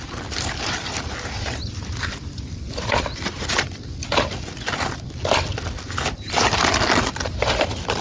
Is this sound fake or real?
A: real